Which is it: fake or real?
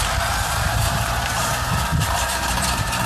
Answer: fake